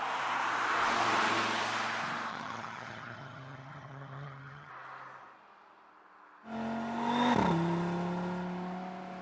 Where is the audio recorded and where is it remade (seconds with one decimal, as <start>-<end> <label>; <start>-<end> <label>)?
0.0-2.3 recorded; 2.3-4.7 remade; 4.7-9.2 recorded